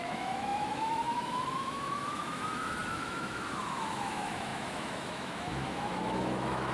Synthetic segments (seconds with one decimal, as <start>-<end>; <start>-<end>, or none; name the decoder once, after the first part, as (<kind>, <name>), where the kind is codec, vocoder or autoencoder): 0.0-6.7 (autoencoder, DAC-VAE)